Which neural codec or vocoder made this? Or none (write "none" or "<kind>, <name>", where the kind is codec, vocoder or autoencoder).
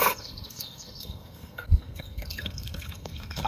codec, SNAC